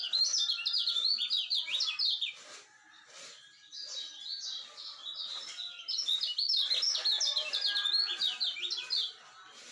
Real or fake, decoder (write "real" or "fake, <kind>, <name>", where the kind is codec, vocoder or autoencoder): real